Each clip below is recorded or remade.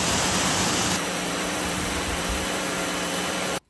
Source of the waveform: remade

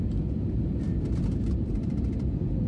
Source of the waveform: remade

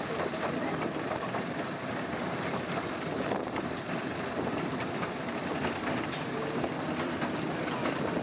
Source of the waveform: remade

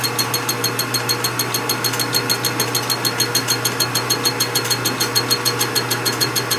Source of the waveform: recorded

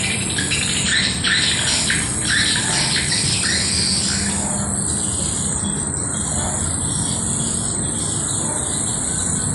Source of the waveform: recorded